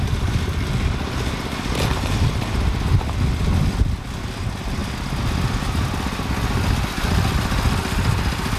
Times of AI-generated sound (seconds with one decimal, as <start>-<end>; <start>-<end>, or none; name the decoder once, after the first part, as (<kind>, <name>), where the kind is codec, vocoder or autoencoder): none